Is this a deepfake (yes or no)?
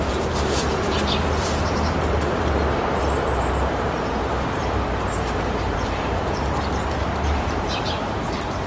yes